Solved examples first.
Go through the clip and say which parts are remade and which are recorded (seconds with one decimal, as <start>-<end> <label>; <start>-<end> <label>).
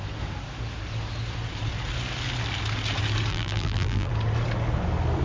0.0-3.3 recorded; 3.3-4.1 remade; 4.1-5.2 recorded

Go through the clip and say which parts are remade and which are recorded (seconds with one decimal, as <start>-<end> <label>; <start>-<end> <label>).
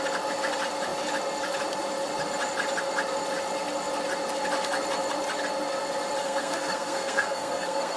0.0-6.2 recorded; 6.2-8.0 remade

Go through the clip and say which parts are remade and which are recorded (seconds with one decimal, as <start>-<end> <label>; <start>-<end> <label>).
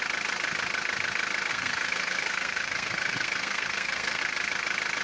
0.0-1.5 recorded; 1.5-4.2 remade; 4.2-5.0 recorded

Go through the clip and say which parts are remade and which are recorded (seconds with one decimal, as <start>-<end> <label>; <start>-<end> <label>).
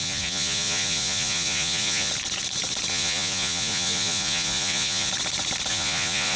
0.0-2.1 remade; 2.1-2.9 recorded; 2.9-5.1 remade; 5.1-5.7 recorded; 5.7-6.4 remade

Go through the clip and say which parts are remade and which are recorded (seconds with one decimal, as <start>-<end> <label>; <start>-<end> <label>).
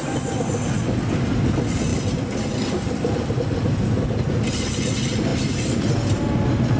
0.0-1.9 recorded; 1.9-3.7 remade; 3.7-5.3 recorded; 5.3-5.9 remade; 5.9-6.8 recorded